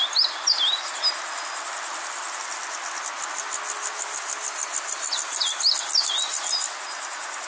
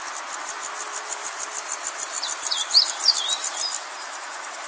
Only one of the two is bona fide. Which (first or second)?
first